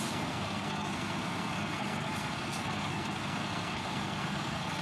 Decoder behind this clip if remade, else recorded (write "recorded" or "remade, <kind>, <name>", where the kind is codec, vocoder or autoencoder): remade, codec, SNAC